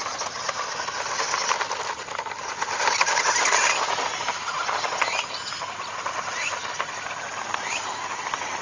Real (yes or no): yes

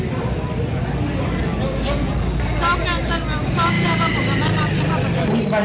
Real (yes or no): yes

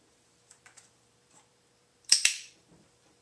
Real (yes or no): no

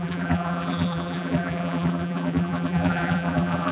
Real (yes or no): no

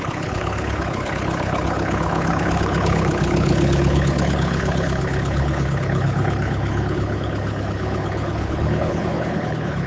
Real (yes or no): no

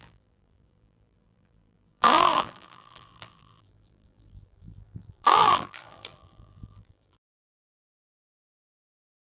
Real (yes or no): no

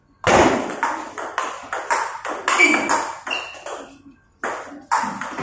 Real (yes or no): yes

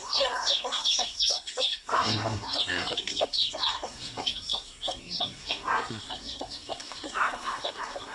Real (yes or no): no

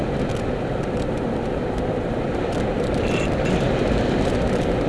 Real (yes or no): yes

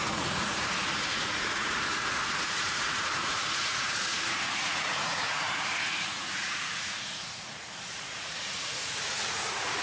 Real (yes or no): no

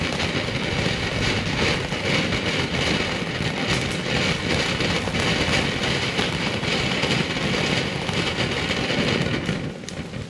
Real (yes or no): yes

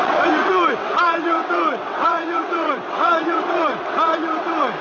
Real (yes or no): no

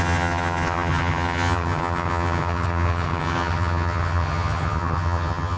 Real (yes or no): no